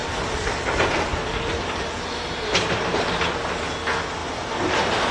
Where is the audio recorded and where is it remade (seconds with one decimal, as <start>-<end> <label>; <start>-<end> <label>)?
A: 0.0-3.1 remade; 3.1-5.1 recorded